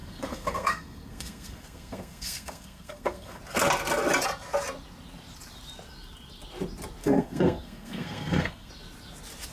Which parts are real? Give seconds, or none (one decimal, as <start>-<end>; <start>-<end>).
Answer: 3.4-7.0; 8.7-9.5